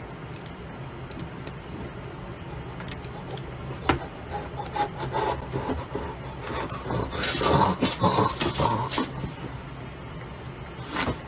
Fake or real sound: real